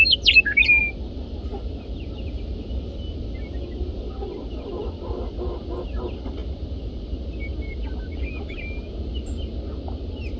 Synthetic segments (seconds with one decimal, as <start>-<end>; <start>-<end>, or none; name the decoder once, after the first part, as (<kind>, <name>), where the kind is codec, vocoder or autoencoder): none